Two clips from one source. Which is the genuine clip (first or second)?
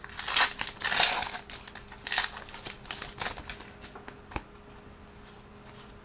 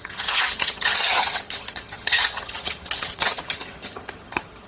first